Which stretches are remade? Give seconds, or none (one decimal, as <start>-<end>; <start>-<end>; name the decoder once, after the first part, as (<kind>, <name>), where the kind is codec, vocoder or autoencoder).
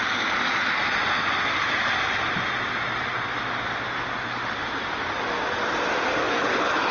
6.2-6.9 (codec, HILCodec)